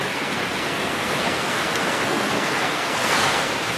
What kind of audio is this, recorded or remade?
remade